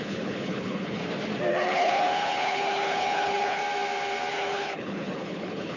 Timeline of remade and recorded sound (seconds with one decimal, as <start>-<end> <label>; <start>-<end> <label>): 0.0-1.0 remade; 1.0-1.5 recorded; 1.5-3.6 remade; 3.6-4.3 recorded; 4.3-5.8 remade